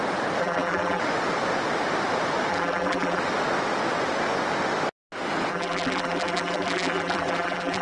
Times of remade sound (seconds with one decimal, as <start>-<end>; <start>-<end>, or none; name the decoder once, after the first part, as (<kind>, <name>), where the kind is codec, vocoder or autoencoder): 0.4-1.0 (vocoder, BigVGAN v2); 2.5-3.2; 5.5-7.8